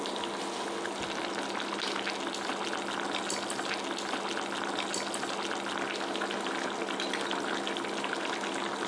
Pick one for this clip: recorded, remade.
recorded